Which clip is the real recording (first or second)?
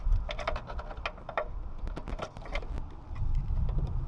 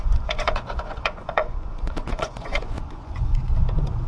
first